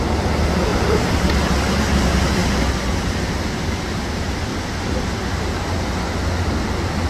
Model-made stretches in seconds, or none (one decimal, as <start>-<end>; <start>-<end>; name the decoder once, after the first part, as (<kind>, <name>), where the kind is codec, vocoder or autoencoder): 0.7-1.5 (vocoder, BigVGAN v2); 4.5-5.5